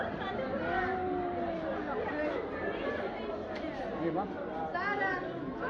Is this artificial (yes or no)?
no